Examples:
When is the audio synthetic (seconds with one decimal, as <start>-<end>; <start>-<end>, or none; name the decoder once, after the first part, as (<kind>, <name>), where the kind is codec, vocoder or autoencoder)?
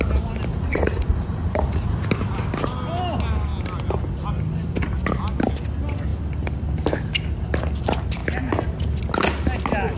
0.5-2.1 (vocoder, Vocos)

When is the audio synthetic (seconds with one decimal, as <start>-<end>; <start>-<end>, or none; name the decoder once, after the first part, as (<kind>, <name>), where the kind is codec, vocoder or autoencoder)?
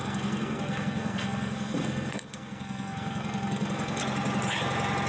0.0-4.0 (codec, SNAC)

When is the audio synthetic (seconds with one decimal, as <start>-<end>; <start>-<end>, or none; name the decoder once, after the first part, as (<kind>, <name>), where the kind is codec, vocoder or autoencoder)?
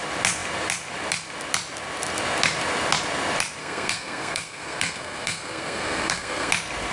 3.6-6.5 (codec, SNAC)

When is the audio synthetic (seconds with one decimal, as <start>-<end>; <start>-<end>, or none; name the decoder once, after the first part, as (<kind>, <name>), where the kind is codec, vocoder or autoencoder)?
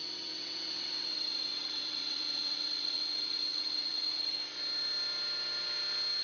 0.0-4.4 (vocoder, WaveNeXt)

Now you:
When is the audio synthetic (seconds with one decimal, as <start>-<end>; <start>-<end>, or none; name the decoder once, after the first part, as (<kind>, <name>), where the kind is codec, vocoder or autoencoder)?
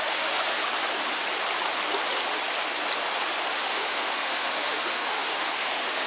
0.0-0.6 (autoencoder, DAC-VAE); 3.5-6.1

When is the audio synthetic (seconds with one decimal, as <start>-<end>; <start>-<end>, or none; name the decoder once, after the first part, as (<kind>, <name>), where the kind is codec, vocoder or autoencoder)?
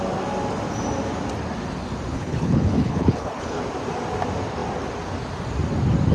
2.1-3.6 (codec, HILCodec)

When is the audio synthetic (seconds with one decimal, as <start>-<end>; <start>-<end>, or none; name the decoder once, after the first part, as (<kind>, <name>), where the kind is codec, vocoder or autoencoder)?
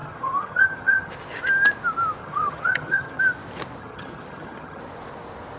0.0-1.1 (vocoder, HiFi-GAN); 2.2-3.2; 3.8-4.8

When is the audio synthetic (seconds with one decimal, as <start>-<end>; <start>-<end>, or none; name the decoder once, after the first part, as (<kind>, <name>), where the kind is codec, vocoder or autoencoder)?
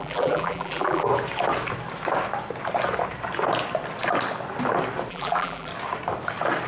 0.0-1.1 (vocoder, BigVGAN v2); 5.1-5.7